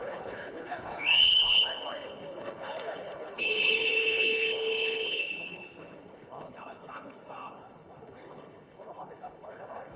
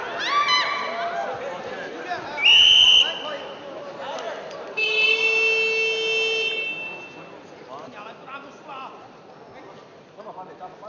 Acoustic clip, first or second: second